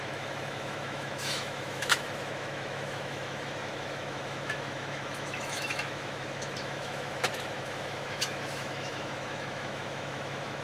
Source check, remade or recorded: remade